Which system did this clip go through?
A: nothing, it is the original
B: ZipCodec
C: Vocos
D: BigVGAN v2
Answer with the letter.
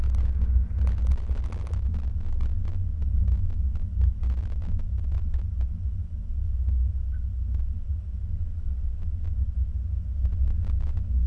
A